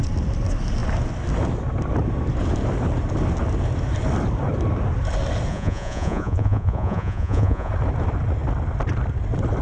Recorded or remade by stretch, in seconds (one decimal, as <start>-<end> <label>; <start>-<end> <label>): 0.0-5.5 recorded; 5.5-7.7 remade; 7.7-9.6 recorded